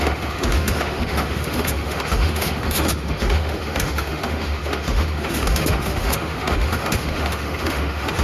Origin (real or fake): fake